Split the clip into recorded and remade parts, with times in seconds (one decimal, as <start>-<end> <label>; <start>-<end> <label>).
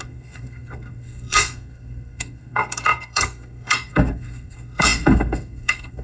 0.0-6.0 remade